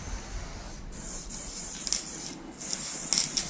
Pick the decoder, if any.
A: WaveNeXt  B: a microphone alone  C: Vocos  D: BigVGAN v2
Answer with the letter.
B